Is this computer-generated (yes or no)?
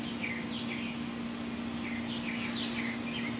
no